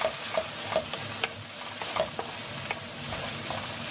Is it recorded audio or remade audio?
recorded